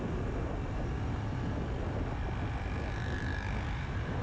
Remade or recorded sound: recorded